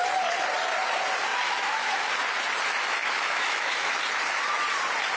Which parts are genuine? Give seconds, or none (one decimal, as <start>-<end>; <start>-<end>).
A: 0.0-1.3; 2.1-3.0; 4.0-5.2